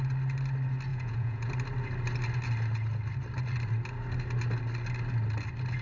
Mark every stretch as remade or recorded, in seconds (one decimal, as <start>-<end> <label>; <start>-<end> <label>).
0.0-0.9 recorded; 0.9-1.5 remade; 1.5-5.8 recorded